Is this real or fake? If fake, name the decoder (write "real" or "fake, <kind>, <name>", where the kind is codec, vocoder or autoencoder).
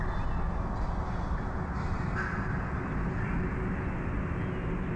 real